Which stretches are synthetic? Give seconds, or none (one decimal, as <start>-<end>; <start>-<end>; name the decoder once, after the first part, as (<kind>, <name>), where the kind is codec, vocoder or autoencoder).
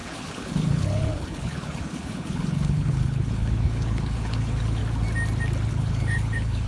0.0-4.8 (codec, HILCodec); 5.7-6.7